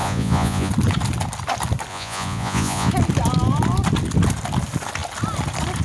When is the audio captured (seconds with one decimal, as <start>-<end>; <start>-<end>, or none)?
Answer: 0.7-1.9; 2.9-5.8